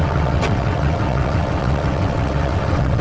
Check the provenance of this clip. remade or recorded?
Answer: remade